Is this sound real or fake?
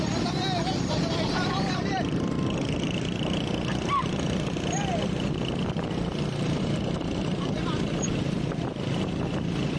fake